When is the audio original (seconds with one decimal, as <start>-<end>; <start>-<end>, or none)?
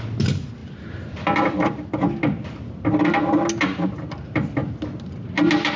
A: 0.0-5.8